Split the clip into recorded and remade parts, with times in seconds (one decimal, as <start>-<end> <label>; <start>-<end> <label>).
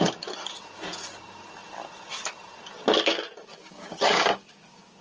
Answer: 0.0-3.5 recorded; 3.5-5.0 remade